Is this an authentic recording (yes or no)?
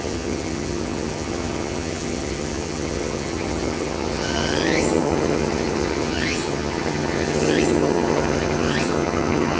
no